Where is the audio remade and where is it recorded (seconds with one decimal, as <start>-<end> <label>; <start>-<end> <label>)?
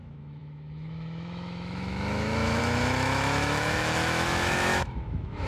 0.0-5.5 remade